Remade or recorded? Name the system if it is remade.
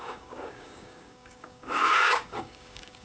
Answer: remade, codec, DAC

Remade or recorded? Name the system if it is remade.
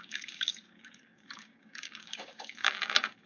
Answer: remade, codec, DAC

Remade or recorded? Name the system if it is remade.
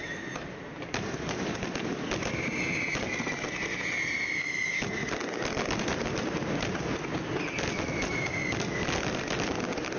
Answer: recorded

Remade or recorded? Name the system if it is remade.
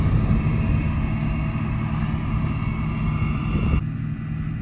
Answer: recorded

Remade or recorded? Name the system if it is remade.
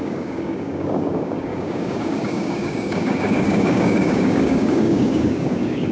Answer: remade, codec, DAC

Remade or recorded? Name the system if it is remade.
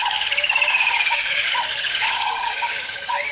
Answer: remade, codec, DAC